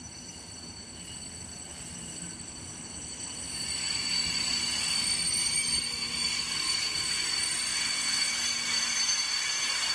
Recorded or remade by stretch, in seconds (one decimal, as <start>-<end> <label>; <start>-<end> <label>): 0.0-7.7 recorded; 7.7-8.3 remade; 8.3-9.9 recorded